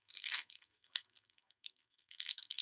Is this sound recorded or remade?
remade